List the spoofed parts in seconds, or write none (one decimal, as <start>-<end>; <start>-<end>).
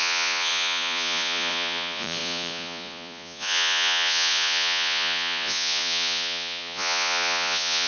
0.0-7.9